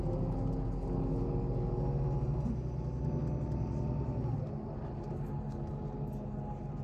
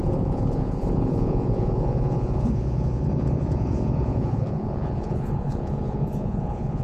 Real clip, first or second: first